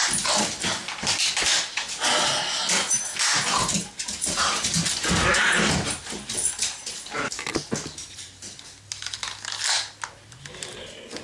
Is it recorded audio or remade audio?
recorded